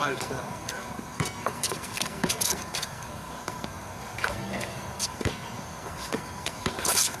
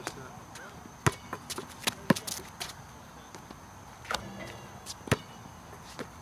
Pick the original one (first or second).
second